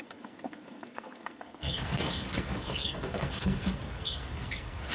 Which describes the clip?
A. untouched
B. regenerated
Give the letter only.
B